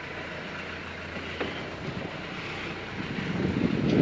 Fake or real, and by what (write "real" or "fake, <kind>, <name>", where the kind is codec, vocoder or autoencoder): real